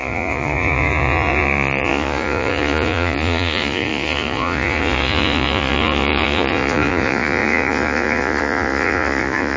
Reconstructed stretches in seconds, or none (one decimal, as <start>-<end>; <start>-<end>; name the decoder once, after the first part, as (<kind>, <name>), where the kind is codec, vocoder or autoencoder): 0.0-9.6 (vocoder, Vocos)